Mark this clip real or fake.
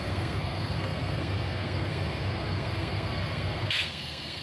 fake